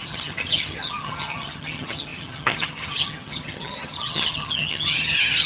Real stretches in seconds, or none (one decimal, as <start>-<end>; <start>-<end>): none